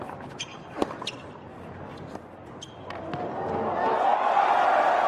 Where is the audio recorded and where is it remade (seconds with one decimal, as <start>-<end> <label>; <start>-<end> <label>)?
0.0-5.1 recorded

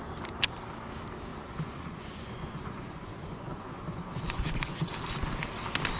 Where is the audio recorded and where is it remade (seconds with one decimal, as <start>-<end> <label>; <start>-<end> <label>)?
0.0-1.3 recorded; 1.3-4.9 remade; 4.9-6.0 recorded

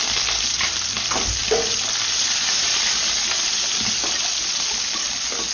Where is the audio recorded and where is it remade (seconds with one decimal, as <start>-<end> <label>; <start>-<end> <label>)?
0.0-5.5 recorded

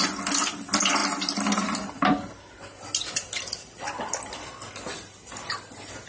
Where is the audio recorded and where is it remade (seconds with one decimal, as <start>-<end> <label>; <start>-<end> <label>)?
0.0-6.1 recorded